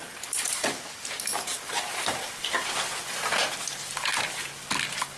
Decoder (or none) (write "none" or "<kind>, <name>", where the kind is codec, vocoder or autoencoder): none